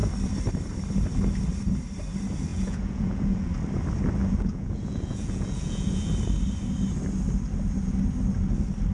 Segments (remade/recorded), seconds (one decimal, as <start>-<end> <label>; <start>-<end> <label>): 0.0-2.5 recorded; 2.5-3.5 remade; 3.5-4.2 recorded; 4.2-6.1 remade; 6.1-8.9 recorded